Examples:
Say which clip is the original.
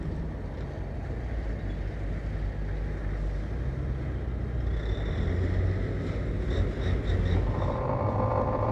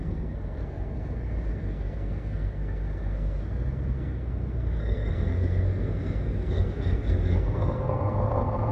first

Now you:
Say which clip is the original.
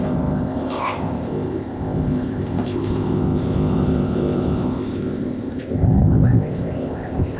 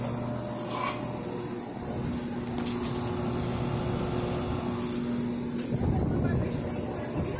second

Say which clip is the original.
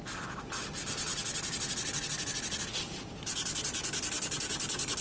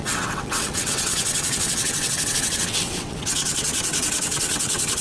first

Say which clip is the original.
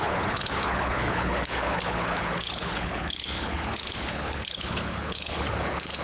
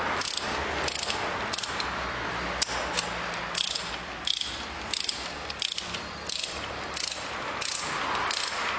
second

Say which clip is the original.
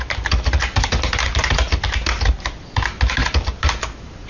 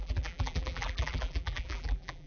first